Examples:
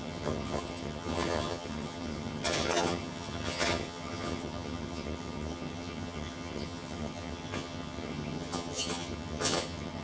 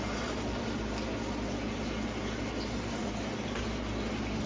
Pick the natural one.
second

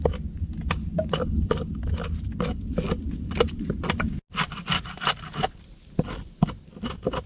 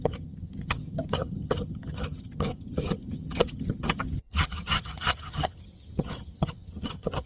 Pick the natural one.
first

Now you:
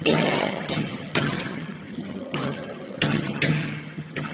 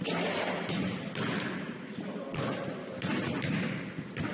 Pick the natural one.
second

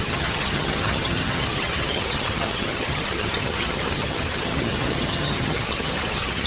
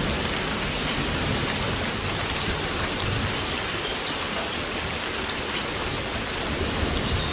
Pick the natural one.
second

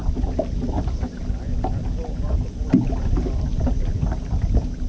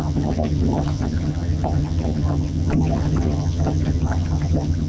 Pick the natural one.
first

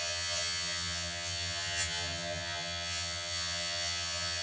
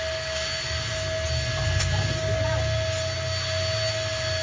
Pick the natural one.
second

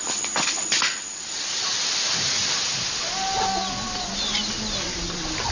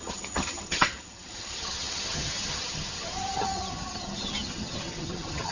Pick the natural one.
first